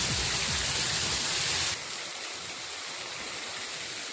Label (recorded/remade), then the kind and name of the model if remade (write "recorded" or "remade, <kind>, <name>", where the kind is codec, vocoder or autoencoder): recorded